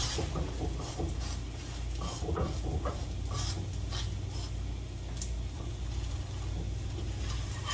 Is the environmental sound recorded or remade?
recorded